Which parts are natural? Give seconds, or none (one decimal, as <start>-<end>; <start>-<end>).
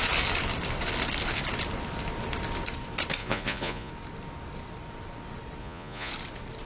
0.0-3.2; 3.9-5.6; 6.1-6.7